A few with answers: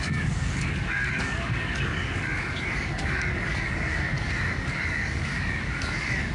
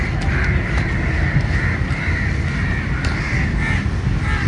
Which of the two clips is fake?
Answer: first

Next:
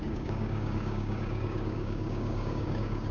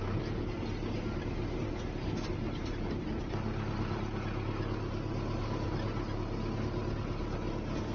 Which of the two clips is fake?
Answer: first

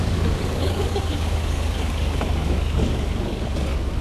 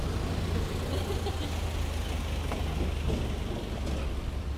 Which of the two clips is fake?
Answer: first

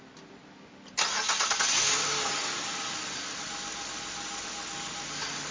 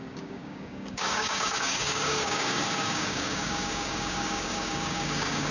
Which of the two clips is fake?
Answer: second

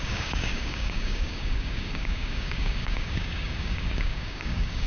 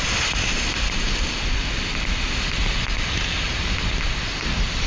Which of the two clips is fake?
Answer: first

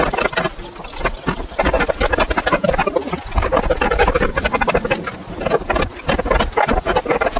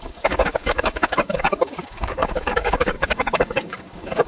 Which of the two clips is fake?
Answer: second